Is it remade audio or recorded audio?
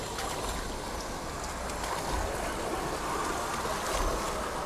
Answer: recorded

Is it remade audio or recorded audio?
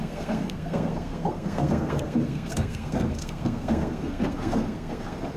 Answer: remade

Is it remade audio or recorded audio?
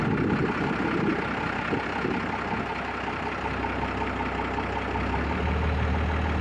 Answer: recorded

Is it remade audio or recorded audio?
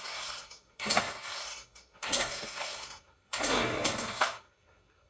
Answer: remade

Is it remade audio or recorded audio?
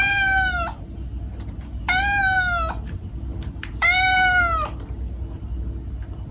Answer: recorded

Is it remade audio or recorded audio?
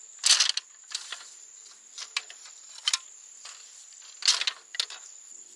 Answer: recorded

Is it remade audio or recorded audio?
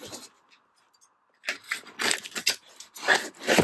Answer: recorded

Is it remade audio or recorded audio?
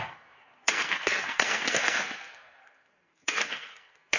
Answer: remade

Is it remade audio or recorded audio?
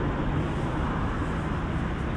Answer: recorded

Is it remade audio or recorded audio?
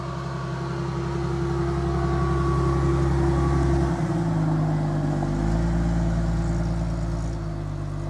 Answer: recorded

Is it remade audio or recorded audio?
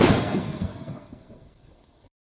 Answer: remade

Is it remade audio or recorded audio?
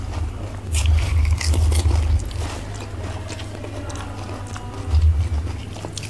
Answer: recorded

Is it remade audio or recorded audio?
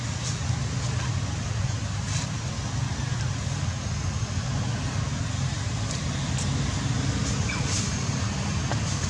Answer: recorded